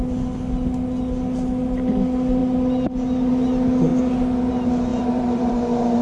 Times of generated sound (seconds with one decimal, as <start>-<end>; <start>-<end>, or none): 4.9-5.5